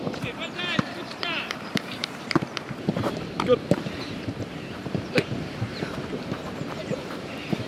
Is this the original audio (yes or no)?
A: no